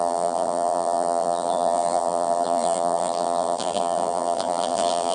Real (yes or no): no